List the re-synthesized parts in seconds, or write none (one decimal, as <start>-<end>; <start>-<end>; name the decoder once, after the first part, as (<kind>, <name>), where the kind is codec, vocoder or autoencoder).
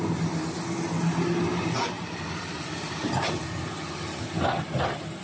1.5-3.1 (vocoder, BigVGAN v2)